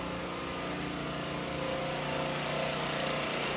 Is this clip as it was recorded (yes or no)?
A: yes